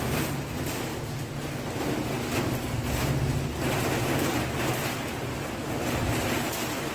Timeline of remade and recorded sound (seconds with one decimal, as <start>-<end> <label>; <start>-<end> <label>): 0.0-0.9 remade; 0.9-4.0 recorded; 4.0-6.9 remade